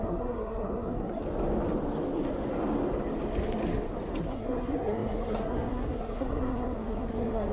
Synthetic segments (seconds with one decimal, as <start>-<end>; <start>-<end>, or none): 0.0-1.2; 4.2-7.5